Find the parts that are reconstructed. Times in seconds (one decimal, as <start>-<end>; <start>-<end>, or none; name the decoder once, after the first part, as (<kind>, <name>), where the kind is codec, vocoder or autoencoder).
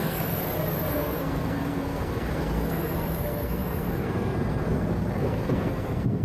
0.0-0.4 (codec, SNAC); 0.9-6.2